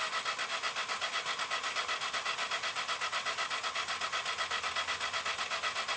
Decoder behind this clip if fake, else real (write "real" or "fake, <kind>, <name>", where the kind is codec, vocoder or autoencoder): real